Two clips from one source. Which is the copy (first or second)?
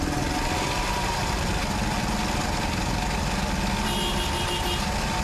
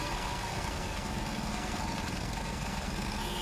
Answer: second